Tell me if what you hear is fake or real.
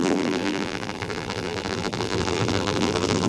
fake